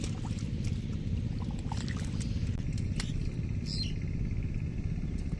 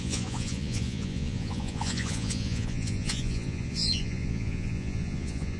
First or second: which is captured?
first